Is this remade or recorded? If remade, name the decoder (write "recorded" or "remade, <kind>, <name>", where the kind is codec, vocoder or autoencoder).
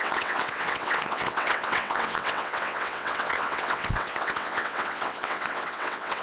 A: remade, vocoder, WaveNeXt